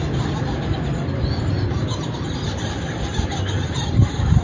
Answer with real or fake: real